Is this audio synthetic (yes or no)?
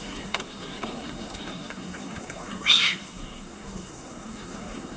yes